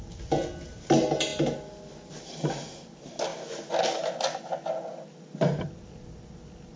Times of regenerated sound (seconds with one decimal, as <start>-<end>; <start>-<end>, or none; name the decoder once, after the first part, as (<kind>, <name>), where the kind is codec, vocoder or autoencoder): none